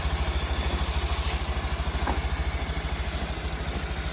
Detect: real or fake real